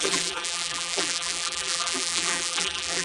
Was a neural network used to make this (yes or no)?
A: yes